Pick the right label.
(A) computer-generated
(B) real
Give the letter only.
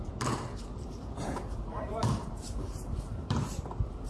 A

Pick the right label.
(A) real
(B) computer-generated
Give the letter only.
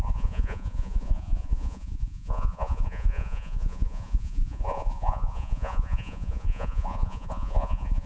B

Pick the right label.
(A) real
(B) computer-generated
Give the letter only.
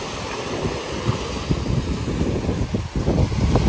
A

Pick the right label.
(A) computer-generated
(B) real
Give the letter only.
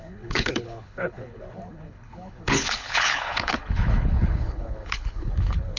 A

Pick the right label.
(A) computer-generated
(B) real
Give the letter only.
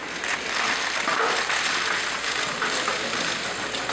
B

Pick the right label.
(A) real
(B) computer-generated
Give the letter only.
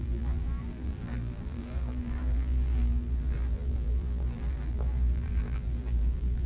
B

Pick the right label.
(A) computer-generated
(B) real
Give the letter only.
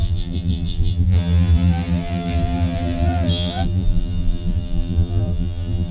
A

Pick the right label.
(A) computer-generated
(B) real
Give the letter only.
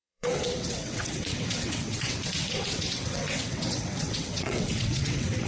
A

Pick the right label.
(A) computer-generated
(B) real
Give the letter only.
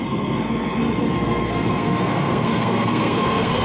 A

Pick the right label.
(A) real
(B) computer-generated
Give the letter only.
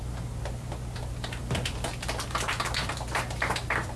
A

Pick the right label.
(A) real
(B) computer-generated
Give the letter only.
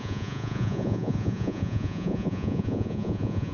B